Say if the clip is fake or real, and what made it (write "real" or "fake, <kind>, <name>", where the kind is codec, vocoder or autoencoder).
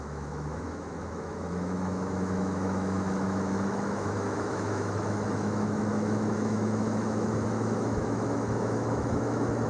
fake, autoencoder, DAC-VAE